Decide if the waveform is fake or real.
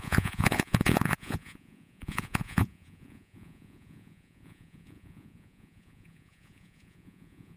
fake